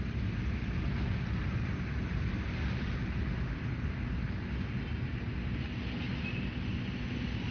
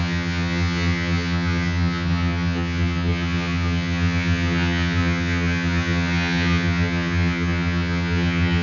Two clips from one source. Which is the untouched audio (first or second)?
first